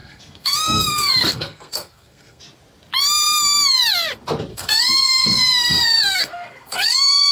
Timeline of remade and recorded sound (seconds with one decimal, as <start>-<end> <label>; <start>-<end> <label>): 0.0-2.4 remade; 2.4-4.5 recorded; 4.5-7.3 remade